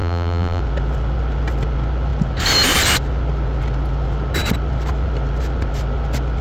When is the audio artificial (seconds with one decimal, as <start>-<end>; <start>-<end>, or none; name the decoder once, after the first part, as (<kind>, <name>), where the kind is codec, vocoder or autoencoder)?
0.0-0.6 (vocoder, BigVGAN v2)